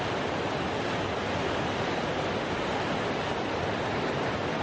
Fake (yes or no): no